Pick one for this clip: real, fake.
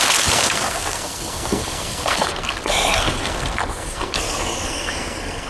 fake